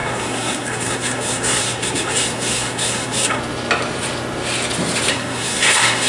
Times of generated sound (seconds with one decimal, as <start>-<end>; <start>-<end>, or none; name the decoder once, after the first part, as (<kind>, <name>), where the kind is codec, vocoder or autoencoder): 0.0-3.4 (codec, SNAC); 5.1-6.1